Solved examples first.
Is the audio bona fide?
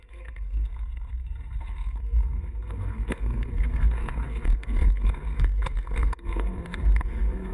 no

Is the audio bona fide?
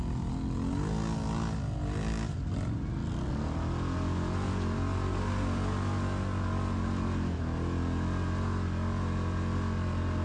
yes